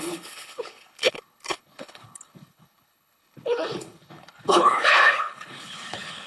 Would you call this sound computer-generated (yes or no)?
yes